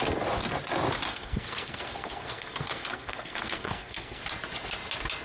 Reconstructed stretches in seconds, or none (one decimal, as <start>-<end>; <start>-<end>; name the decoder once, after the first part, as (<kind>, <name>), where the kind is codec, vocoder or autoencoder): 1.1-4.2 (codec, SNAC)